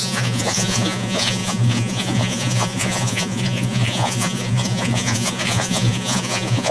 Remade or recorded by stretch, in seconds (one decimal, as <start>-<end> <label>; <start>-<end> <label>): 0.0-6.7 remade